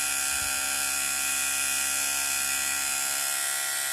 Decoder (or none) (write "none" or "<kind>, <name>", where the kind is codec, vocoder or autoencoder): none